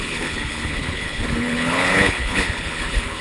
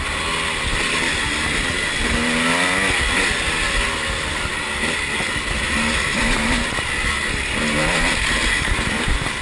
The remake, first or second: first